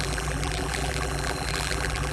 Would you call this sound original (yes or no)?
no